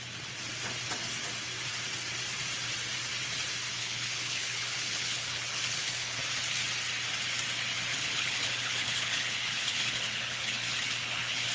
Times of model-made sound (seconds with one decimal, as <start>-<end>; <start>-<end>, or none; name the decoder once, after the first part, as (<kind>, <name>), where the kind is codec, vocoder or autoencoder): 3.8-6.2 (codec, HILCodec); 7.9-11.5